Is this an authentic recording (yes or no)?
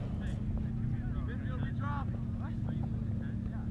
yes